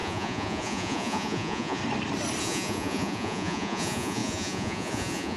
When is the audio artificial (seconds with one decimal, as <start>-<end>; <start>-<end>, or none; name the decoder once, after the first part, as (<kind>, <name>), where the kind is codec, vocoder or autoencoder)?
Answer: 0.0-1.8 (vocoder, Vocos); 2.4-5.4